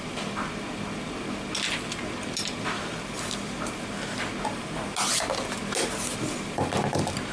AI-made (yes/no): no